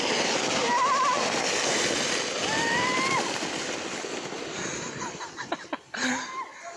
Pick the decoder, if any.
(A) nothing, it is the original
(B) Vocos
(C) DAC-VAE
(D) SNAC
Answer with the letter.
A